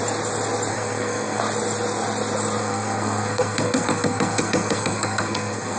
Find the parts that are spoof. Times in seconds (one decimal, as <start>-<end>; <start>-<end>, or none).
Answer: 0.7-1.4; 2.6-5.8